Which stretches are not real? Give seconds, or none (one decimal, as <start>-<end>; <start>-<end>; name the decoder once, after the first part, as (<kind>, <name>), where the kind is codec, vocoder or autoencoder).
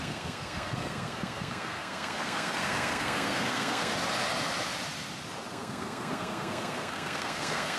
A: 0.0-3.9 (codec, SNAC); 5.5-7.8